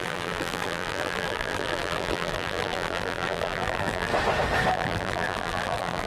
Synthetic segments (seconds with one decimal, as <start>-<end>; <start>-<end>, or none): 0.0-4.1; 4.7-6.1